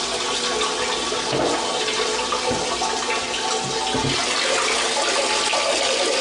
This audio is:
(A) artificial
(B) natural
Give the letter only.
B